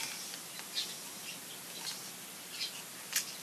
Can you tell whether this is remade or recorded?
recorded